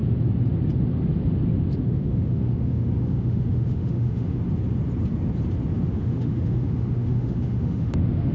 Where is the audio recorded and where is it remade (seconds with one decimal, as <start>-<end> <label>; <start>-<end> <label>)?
0.0-1.8 recorded; 1.8-4.4 remade; 4.4-5.9 recorded; 5.9-8.3 remade